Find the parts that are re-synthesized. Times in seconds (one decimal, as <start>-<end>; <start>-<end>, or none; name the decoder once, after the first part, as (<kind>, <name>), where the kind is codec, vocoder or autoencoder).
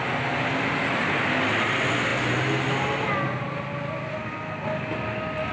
none